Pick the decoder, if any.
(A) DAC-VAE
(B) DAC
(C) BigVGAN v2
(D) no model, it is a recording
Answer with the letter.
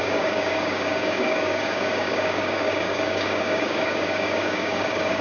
B